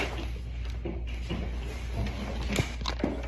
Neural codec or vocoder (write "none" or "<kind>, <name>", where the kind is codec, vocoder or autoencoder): none